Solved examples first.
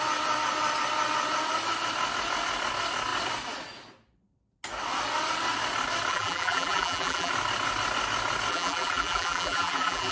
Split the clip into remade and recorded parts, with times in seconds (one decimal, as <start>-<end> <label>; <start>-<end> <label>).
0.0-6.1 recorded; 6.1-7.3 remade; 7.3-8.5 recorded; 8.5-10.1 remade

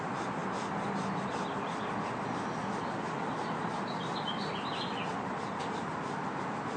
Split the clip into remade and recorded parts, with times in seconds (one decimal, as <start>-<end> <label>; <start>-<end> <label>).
0.0-6.8 recorded

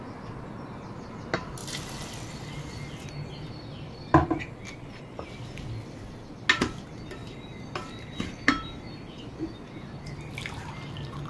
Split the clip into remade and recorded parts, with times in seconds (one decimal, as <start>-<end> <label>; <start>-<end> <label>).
0.0-11.3 recorded

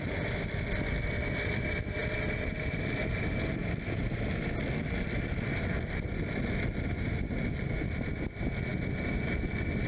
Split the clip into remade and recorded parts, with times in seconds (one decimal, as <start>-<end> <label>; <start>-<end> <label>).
0.0-9.9 recorded

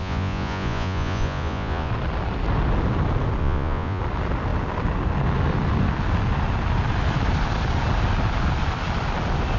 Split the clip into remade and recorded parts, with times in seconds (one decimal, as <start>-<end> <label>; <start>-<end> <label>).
0.0-1.9 remade; 1.9-3.4 recorded; 3.4-4.0 remade; 4.0-9.6 recorded